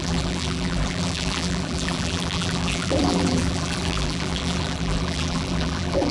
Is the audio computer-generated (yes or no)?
yes